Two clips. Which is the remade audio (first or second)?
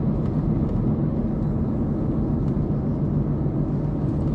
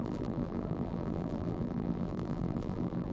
second